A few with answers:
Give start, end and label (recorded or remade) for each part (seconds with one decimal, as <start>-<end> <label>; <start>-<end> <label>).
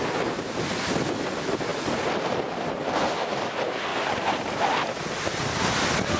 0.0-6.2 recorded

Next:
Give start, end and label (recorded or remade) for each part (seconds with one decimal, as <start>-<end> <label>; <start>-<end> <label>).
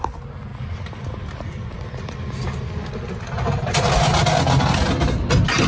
0.0-5.7 recorded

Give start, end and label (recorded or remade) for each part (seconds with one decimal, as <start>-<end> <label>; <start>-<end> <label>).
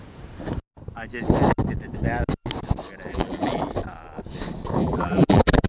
0.0-3.1 recorded; 3.1-3.6 remade; 3.6-4.8 recorded; 4.8-5.7 remade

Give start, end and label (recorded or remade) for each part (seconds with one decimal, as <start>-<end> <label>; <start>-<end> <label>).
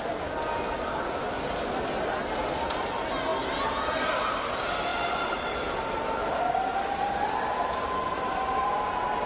0.0-9.3 recorded